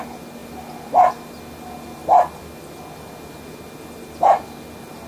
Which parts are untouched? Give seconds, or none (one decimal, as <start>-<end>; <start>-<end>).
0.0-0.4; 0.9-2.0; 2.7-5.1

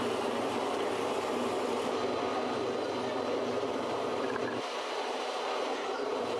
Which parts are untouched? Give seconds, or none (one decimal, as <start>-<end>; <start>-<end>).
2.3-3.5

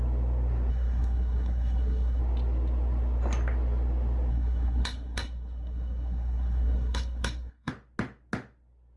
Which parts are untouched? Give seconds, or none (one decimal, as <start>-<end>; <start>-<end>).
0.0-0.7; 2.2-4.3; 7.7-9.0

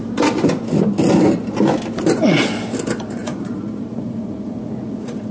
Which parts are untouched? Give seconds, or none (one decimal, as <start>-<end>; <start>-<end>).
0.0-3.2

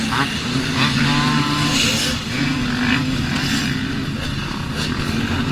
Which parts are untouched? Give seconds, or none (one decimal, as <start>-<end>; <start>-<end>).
0.0-5.5